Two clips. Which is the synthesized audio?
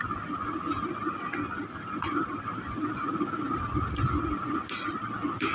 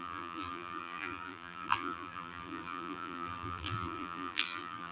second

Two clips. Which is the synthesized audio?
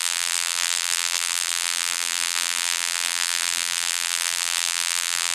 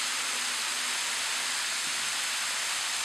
first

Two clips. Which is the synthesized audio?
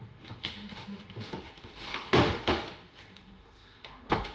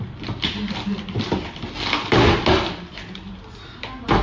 first